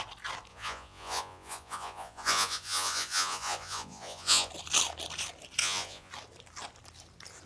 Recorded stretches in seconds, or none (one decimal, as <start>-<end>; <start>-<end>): 0.0-0.5; 4.5-5.6; 6.1-7.5